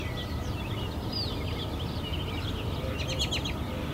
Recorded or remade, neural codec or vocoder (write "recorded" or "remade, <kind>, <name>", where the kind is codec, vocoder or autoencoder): recorded